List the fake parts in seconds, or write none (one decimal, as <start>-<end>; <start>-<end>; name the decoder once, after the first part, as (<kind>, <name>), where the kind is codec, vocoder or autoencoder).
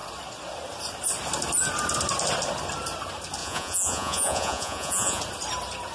3.4-5.2 (vocoder, Vocos)